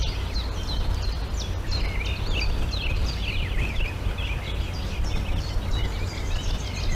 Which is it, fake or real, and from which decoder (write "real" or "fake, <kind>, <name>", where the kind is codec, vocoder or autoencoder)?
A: real